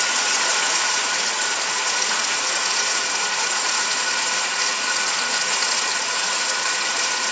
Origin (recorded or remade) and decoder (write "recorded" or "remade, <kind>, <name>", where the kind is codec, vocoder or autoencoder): remade, vocoder, Vocos